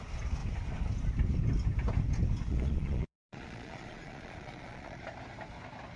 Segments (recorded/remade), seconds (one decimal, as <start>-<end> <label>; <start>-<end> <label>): 0.0-2.5 recorded; 2.5-5.0 remade; 5.0-6.0 recorded